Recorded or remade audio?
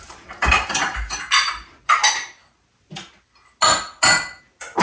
recorded